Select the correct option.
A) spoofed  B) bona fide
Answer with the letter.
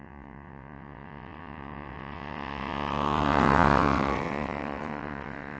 A